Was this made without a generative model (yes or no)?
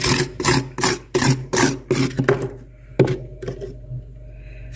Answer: yes